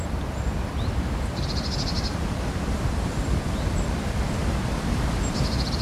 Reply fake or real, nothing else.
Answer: fake